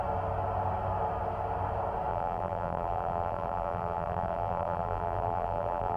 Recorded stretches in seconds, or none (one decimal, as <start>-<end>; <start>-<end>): 0.0-2.1